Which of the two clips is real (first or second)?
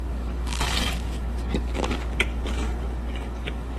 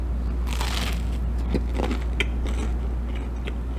second